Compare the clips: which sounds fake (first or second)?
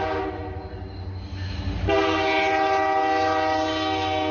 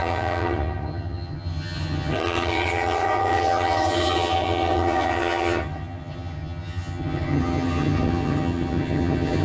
second